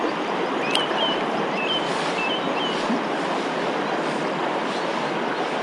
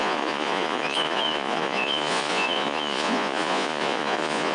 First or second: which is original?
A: first